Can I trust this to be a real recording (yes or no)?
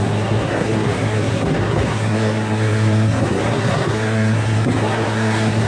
no